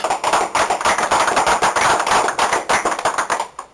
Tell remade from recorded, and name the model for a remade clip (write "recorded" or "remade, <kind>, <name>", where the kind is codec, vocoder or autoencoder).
recorded